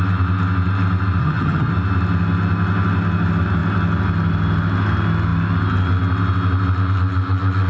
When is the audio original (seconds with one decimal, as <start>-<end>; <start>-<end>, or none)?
0.0-1.2; 1.7-7.7